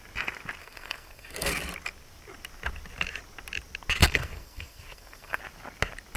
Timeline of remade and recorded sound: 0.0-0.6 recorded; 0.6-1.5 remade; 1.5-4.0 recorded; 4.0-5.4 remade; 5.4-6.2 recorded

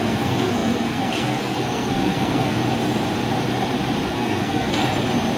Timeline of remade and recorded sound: 0.0-2.6 remade; 2.6-4.1 recorded; 4.1-4.8 remade; 4.8-5.4 recorded

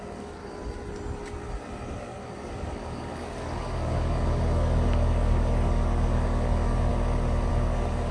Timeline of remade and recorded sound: 0.0-0.4 remade; 0.4-2.0 recorded; 2.0-6.9 remade; 6.9-7.5 recorded; 7.5-8.1 remade

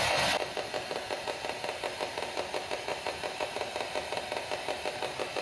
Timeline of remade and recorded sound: 0.0-2.9 recorded; 2.9-3.5 remade; 3.5-5.4 recorded